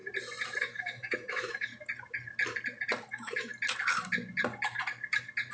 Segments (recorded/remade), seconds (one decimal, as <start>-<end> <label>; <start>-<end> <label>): 0.0-0.6 recorded; 0.6-1.7 remade; 1.7-3.1 recorded; 3.1-3.5 remade; 3.5-5.5 recorded